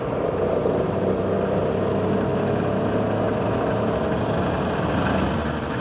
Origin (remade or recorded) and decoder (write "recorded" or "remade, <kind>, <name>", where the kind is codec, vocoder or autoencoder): recorded